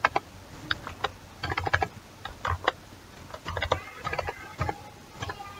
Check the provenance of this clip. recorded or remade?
recorded